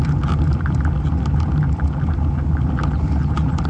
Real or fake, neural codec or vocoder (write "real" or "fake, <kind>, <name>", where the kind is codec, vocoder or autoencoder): real